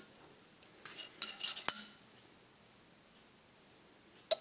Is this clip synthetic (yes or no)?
no